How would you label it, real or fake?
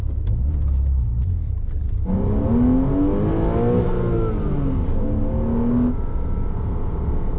real